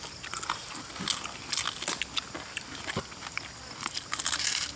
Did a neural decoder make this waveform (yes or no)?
no